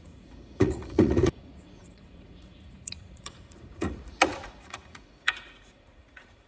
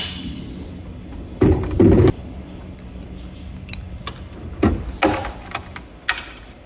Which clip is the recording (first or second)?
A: second